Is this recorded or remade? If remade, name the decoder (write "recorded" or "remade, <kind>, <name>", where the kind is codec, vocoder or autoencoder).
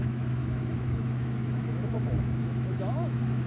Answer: remade, autoencoder, DAC-VAE